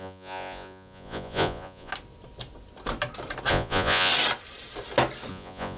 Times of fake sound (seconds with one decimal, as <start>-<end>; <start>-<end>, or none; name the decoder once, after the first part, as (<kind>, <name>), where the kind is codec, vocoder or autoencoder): 0.0-1.9 (vocoder, Vocos); 3.5-4.1; 5.3-5.8